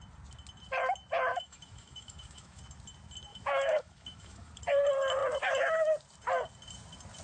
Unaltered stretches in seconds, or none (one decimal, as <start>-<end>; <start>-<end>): 0.0-1.3; 2.6-3.3; 4.5-7.2